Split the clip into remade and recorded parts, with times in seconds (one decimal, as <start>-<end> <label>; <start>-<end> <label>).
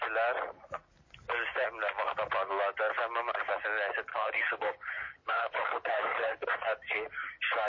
0.0-4.1 recorded; 4.1-6.5 remade; 6.5-7.7 recorded